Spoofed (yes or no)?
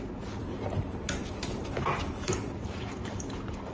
yes